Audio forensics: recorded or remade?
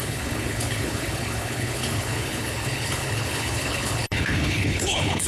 remade